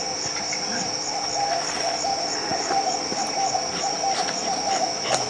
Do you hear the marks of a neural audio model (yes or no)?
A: no